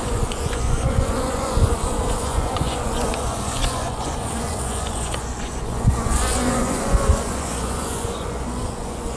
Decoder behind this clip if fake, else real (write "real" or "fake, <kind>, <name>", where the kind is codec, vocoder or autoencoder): fake, vocoder, Vocos